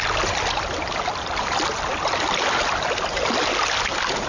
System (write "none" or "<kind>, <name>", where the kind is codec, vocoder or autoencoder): none